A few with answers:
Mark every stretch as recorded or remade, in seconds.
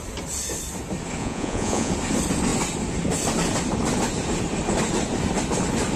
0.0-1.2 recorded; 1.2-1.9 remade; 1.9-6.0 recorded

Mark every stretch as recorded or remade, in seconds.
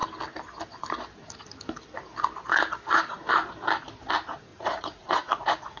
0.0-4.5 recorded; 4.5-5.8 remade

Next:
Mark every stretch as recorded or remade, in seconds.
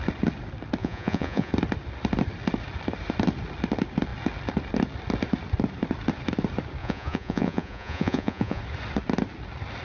0.0-0.8 recorded; 0.8-1.5 remade; 1.5-6.8 recorded; 6.8-8.6 remade; 8.6-9.8 recorded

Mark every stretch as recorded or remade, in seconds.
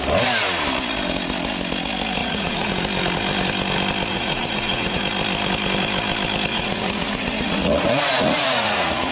0.0-2.2 recorded; 2.2-2.7 remade; 2.7-4.1 recorded; 4.1-5.0 remade; 5.0-6.5 recorded; 6.5-9.1 remade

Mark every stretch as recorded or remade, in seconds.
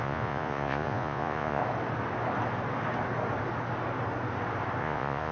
0.0-1.6 remade; 1.6-4.8 recorded; 4.8-5.3 remade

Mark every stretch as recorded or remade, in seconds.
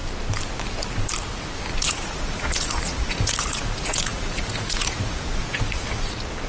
0.0-1.8 recorded; 1.8-6.5 remade